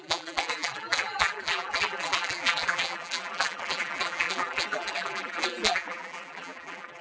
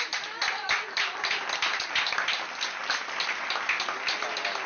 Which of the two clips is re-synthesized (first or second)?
first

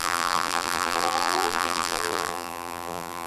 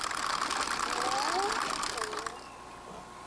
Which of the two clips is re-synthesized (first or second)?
first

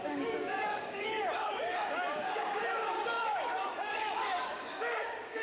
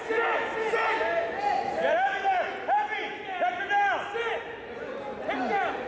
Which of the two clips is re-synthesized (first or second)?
first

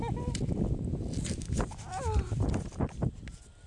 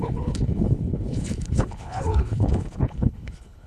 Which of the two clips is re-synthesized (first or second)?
second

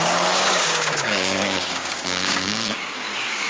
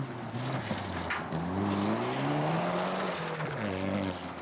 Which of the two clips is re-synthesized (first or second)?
first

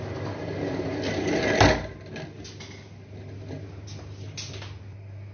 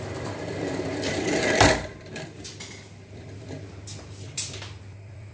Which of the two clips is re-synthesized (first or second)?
second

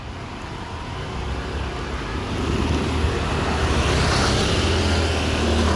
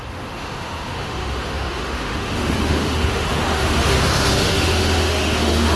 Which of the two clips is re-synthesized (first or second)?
second